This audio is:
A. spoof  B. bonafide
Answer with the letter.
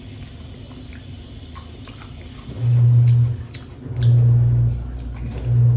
B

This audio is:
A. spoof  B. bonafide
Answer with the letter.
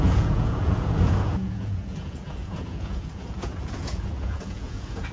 A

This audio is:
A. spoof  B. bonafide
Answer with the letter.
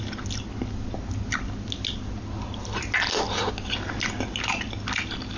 B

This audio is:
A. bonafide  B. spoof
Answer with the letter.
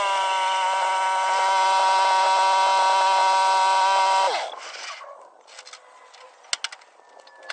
A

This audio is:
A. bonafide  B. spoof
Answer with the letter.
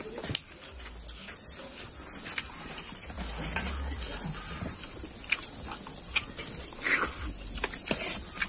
A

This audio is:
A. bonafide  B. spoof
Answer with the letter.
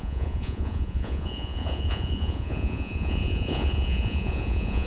B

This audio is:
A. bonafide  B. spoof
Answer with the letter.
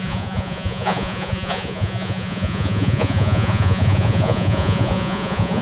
B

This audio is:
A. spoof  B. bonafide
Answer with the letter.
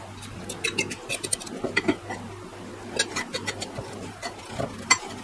B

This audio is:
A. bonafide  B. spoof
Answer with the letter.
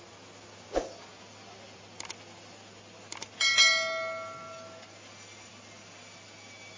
A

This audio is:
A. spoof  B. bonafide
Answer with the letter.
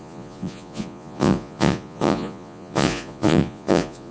A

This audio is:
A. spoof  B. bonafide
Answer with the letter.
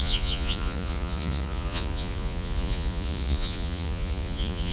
A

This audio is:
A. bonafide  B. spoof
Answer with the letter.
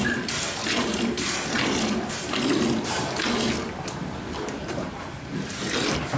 A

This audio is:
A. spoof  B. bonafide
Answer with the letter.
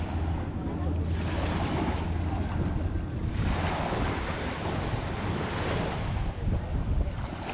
B